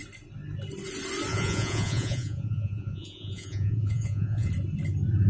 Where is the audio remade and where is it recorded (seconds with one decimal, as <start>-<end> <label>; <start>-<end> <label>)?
0.0-1.3 recorded; 1.3-4.5 remade; 4.5-5.3 recorded